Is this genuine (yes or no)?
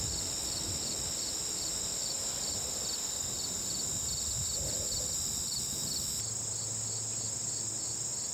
yes